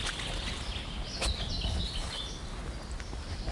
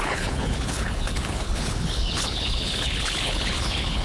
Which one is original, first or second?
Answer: first